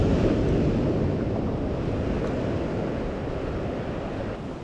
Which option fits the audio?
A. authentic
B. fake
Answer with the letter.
A